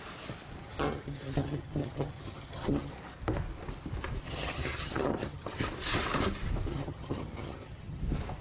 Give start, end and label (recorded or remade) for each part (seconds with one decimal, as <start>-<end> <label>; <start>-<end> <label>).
0.0-0.6 recorded; 0.6-2.9 remade; 2.9-4.2 recorded; 4.2-5.6 remade; 5.6-6.7 recorded; 6.7-8.0 remade; 8.0-8.4 recorded